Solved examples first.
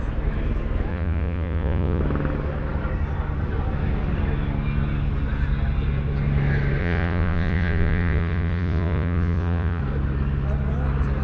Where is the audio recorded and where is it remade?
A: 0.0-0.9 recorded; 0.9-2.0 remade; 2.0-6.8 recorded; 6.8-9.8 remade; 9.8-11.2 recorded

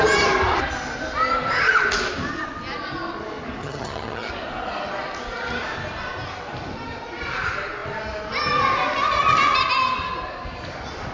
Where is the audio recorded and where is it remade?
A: 0.0-3.6 recorded; 3.6-4.3 remade; 4.3-11.1 recorded

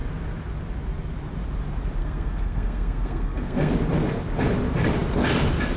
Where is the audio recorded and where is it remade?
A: 0.0-2.0 recorded; 2.0-3.7 remade; 3.7-5.8 recorded

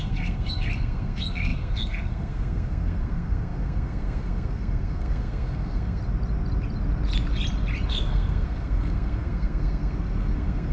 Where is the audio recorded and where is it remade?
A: 0.0-6.0 remade; 6.0-7.9 recorded; 7.9-10.7 remade

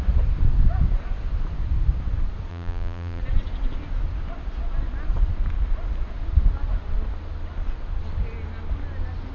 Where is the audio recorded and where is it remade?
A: 0.0-2.5 recorded; 2.5-3.2 remade; 3.2-9.3 recorded